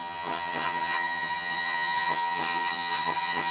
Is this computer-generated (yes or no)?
yes